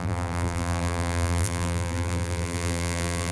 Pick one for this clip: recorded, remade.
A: remade